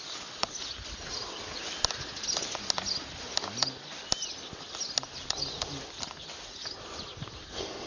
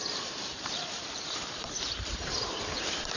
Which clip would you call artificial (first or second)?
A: second